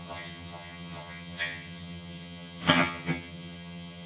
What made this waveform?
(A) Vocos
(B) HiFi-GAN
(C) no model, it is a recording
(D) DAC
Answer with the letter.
B